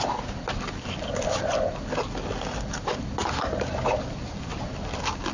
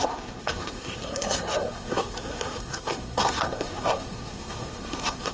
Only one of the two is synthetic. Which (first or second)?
second